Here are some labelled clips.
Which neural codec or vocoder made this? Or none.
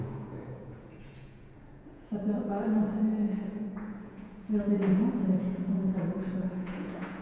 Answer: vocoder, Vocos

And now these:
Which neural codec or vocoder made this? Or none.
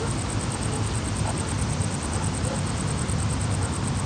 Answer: none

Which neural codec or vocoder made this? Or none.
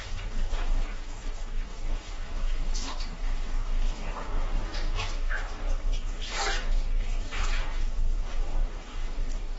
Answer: codec, DAC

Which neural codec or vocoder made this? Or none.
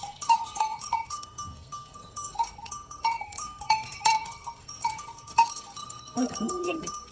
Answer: codec, SNAC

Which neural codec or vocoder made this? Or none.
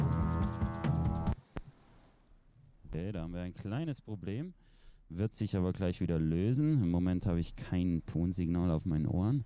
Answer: none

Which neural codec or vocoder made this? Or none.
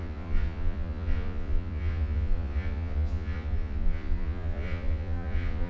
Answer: vocoder, Vocos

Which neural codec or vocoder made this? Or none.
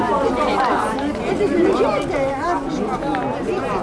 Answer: none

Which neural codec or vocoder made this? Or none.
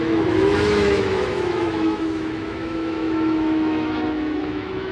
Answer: autoencoder, DAC-VAE